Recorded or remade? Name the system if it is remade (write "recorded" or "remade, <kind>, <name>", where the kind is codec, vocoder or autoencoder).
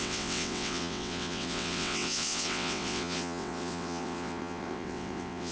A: remade, vocoder, WaveNeXt